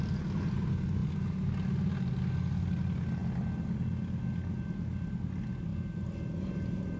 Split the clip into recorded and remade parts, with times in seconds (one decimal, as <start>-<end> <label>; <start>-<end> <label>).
0.0-7.0 recorded